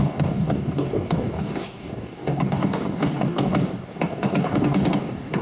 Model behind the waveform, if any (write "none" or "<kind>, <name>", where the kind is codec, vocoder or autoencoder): codec, DAC